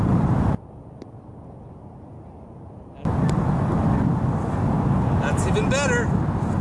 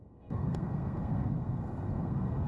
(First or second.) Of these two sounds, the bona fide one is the first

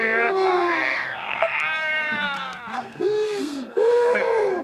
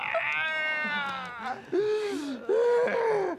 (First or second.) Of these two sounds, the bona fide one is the second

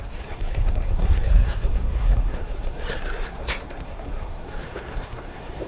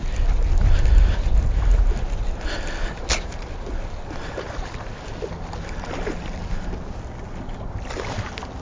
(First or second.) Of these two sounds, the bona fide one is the second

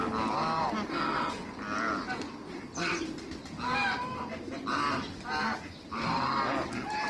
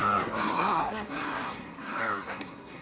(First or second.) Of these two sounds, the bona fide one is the first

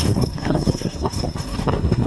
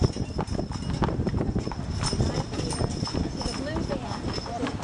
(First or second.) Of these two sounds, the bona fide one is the second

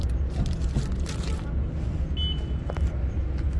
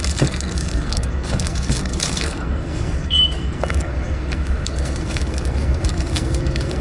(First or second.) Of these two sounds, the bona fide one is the first